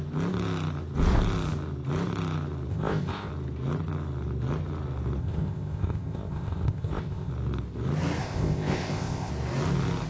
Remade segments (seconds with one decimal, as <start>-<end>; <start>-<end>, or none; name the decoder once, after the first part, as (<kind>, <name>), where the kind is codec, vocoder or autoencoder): 2.7-3.3 (codec, ZipCodec); 5.2-7.3; 8.2-9.3